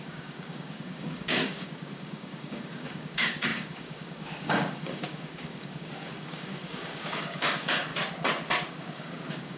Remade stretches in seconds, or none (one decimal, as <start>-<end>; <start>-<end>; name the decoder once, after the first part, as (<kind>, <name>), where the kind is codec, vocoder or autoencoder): 0.0-7.9 (codec, DAC); 8.7-9.6